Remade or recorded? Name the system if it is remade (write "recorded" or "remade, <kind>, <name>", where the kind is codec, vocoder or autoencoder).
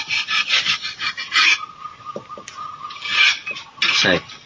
recorded